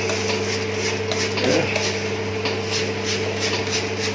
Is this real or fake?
real